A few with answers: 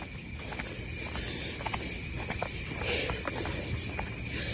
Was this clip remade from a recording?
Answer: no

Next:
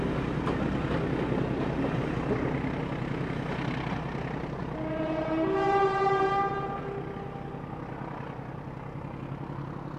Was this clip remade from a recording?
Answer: no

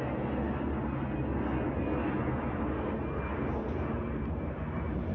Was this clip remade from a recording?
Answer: no